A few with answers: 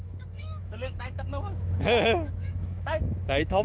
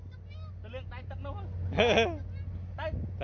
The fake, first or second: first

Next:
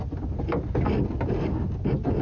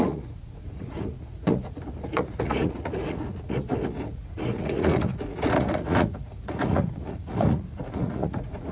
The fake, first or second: second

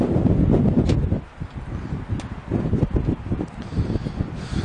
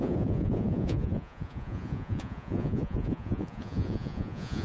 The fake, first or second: second